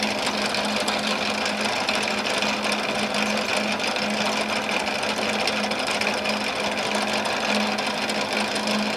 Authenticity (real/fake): real